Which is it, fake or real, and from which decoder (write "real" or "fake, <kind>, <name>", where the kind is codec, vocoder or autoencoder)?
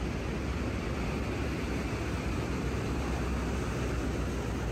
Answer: real